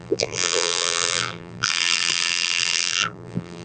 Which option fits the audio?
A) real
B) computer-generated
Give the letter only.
B